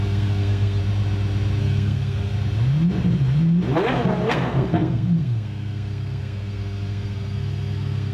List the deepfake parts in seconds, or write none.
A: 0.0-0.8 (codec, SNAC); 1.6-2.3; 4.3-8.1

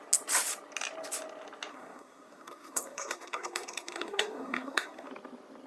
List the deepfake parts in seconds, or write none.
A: 1.7-5.1 (codec, SNAC)

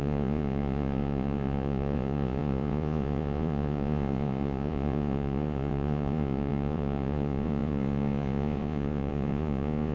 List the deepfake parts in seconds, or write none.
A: 0.0-9.9 (vocoder, Vocos)

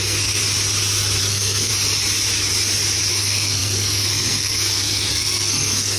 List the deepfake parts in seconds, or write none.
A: 0.0-0.4 (codec, SNAC); 1.2-1.7; 3.1-6.0